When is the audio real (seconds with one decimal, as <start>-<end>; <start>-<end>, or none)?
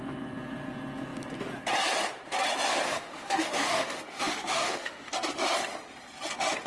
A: 0.0-2.9; 5.1-6.7